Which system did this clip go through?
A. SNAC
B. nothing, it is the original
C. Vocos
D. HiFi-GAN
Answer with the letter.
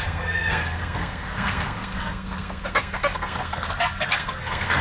A